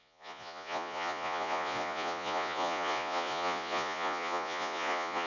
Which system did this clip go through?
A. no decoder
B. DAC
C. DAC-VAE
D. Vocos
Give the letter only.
D